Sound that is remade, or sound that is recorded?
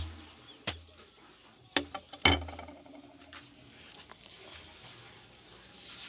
recorded